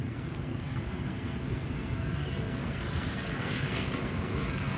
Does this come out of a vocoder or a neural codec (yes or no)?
yes